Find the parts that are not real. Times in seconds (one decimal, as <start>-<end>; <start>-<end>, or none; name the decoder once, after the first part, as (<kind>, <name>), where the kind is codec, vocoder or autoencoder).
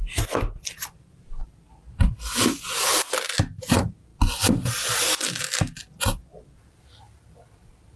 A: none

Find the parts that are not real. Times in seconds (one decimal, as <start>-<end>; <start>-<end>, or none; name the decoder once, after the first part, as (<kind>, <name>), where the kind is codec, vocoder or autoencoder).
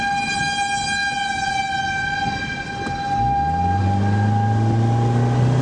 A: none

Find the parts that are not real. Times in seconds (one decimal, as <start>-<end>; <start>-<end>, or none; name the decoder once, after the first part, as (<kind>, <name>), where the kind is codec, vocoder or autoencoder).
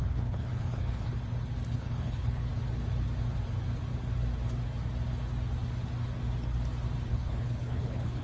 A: 0.0-1.1 (codec, HILCodec); 1.7-2.5; 7.1-8.2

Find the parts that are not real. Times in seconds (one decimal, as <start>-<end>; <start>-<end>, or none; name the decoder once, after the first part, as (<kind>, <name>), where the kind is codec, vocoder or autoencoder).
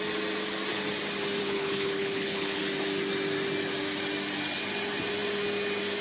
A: 1.4-2.6 (codec, HILCodec)